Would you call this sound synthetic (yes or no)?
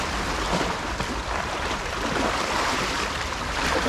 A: yes